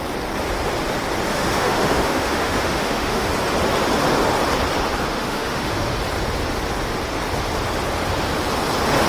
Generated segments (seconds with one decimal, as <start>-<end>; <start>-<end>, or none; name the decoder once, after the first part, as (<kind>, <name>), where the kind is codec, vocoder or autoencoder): 1.3-3.3 (autoencoder, DAC-VAE); 5.1-6.0